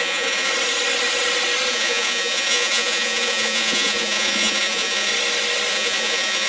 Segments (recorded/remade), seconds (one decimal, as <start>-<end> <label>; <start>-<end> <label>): 0.0-0.5 remade; 0.5-1.7 recorded; 1.7-5.1 remade; 5.1-5.7 recorded; 5.7-6.5 remade